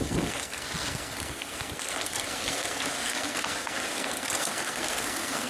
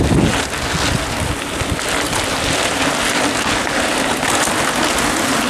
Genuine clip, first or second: second